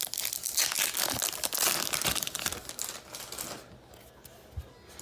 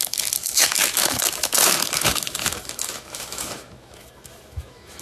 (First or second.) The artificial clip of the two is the second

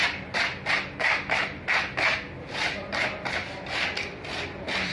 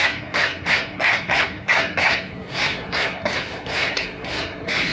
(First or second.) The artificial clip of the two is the second